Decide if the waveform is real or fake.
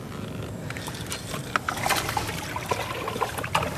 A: real